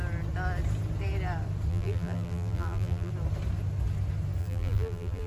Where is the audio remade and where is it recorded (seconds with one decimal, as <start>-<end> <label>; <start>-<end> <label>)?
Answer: 0.0-1.7 recorded; 1.7-3.1 remade; 3.1-4.4 recorded; 4.4-5.3 remade